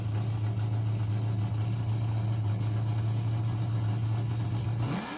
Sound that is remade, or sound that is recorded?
recorded